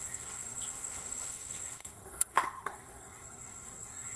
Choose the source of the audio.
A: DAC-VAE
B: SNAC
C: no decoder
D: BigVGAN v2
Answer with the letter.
B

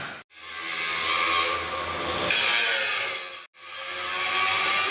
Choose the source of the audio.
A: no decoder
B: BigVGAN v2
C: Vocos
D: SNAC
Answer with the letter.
A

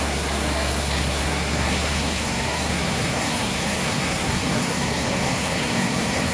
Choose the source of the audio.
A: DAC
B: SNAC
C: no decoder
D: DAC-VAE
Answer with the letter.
B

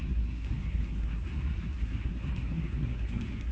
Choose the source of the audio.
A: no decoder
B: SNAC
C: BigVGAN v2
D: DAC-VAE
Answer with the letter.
B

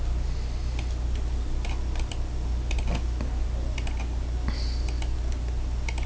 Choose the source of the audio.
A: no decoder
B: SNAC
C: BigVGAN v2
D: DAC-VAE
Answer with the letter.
A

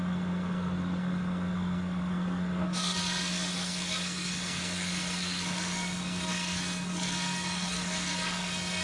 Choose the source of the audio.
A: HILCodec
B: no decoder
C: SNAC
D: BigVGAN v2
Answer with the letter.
C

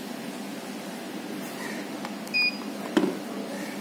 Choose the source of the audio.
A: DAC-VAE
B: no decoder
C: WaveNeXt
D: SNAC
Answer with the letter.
B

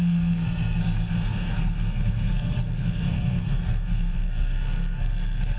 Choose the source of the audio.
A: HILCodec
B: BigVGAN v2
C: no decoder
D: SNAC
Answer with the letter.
D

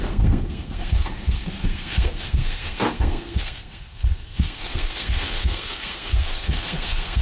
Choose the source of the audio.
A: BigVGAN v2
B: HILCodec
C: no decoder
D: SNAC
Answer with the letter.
D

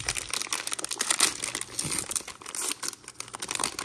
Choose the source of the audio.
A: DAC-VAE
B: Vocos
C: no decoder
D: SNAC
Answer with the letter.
C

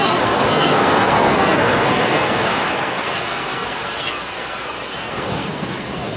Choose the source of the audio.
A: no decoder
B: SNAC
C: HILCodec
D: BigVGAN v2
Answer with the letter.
B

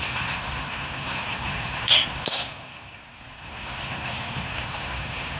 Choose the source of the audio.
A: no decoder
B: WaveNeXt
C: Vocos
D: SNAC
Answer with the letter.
D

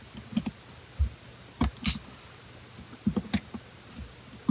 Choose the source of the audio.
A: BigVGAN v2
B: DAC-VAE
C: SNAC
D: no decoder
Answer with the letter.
D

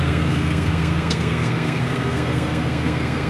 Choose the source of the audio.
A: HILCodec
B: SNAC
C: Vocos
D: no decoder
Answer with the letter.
B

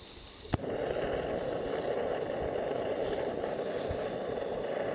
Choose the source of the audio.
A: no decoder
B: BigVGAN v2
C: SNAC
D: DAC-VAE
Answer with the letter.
A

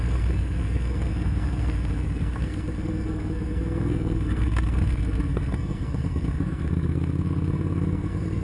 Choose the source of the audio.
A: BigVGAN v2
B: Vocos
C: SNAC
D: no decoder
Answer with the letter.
C